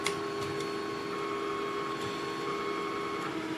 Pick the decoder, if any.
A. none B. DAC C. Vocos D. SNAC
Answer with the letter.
A